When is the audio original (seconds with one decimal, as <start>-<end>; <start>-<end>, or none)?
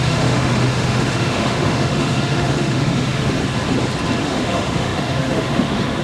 3.4-4.2